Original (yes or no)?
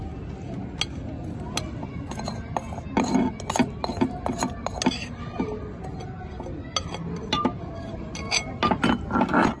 yes